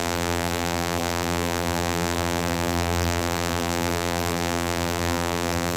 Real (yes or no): no